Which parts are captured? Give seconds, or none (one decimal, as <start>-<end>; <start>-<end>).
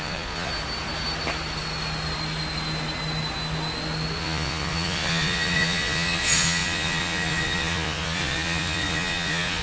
0.5-4.2